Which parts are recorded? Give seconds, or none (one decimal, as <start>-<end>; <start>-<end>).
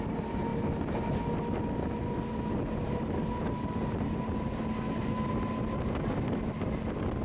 0.0-7.2